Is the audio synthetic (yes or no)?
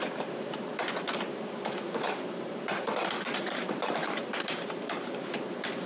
yes